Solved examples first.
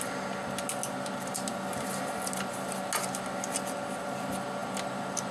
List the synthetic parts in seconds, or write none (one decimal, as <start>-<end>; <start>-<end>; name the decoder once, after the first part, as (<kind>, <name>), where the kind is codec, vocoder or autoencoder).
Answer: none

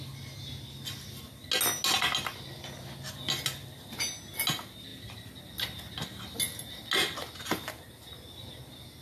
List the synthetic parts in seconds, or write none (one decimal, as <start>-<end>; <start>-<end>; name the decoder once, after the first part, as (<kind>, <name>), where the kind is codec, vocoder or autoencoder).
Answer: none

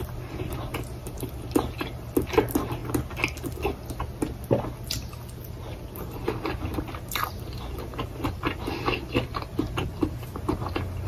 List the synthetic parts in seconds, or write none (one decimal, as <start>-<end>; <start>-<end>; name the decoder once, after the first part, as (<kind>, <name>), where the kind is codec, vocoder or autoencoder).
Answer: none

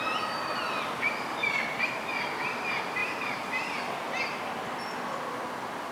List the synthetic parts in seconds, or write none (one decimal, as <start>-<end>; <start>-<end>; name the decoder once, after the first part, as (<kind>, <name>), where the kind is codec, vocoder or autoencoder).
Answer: 1.4-2.1 (vocoder, BigVGAN v2); 3.0-4.2

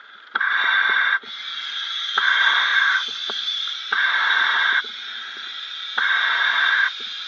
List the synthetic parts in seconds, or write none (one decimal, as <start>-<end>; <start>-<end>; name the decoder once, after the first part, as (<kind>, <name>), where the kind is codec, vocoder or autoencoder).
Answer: 2.7-4.8 (vocoder, BigVGAN v2); 6.4-7.3

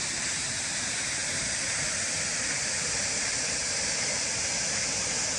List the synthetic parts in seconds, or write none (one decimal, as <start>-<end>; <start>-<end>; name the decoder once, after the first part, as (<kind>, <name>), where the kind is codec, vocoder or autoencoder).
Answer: 1.2-4.4 (vocoder, BigVGAN v2)

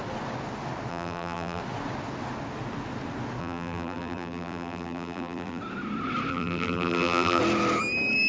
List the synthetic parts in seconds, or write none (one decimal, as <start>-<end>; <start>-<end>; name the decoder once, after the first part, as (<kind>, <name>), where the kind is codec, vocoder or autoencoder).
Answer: 0.9-1.6 (vocoder, BigVGAN v2); 3.4-5.6; 6.3-7.4

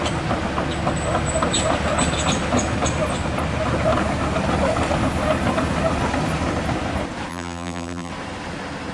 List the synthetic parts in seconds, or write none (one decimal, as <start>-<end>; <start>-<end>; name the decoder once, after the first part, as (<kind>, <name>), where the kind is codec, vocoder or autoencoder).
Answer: 7.3-8.1 (vocoder, BigVGAN v2)